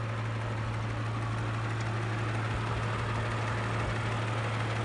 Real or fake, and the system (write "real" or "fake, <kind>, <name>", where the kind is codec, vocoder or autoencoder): real